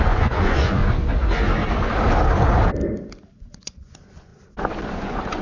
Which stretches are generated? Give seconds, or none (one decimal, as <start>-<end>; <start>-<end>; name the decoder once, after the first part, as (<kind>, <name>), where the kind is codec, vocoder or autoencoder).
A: 0.0-0.8 (vocoder, Vocos); 3.4-4.3; 4.9-5.4